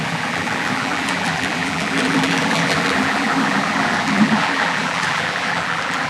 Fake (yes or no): yes